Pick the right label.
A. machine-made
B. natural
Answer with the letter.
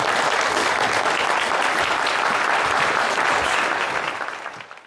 B